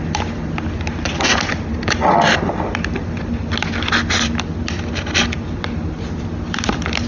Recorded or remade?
recorded